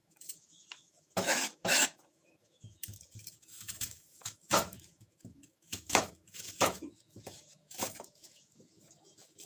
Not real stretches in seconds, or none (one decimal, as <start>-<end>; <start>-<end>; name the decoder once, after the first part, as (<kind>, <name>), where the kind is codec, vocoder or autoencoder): 0.0-9.5 (autoencoder, DAC-VAE)